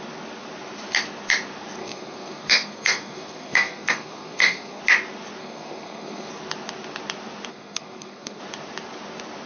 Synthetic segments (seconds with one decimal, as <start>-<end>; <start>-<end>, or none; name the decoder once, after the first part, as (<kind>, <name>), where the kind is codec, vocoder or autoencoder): 1.8-4.8 (codec, SNAC); 5.4-6.3; 7.5-8.4

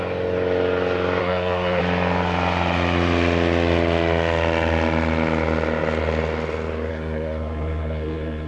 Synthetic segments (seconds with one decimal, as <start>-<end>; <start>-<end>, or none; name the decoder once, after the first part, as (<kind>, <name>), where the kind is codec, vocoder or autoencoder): 1.2-1.8 (codec, SNAC); 6.9-8.5

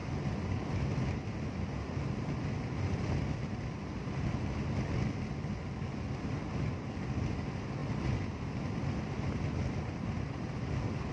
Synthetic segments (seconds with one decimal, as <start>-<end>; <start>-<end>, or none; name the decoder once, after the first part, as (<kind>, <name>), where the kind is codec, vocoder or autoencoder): none